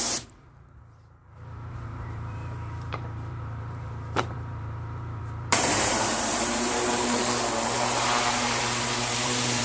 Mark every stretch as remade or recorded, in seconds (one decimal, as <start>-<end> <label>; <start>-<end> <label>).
0.0-7.2 remade; 7.2-8.3 recorded; 8.3-9.6 remade